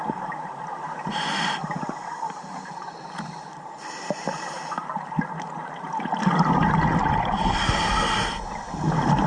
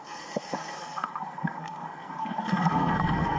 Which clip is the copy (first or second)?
second